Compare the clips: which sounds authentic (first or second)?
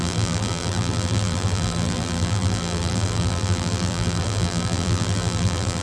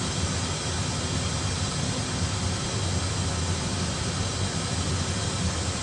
second